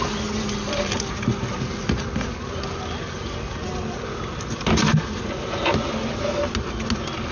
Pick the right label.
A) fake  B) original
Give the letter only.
B